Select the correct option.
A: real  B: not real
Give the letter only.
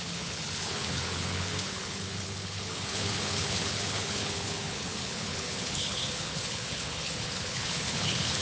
B